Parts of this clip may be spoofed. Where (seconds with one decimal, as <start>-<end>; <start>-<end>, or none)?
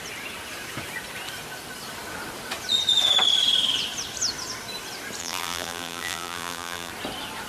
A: 5.2-6.9